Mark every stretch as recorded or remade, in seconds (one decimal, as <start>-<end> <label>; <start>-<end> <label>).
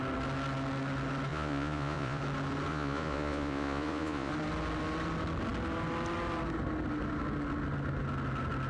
0.0-1.3 recorded; 1.3-2.2 remade; 2.2-2.7 recorded; 2.7-4.3 remade; 4.3-8.7 recorded